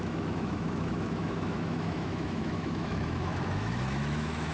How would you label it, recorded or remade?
remade